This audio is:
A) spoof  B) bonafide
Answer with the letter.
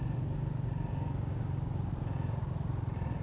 B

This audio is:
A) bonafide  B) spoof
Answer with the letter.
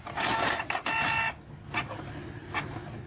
A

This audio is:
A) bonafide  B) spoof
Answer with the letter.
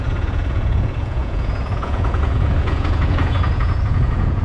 B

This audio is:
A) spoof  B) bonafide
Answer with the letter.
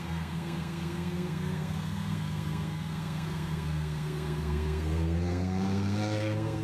A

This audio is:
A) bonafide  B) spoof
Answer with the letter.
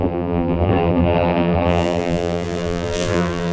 B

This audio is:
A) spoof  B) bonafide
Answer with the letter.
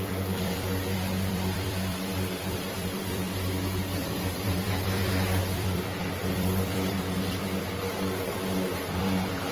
A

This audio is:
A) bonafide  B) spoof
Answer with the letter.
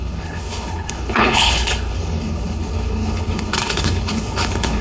B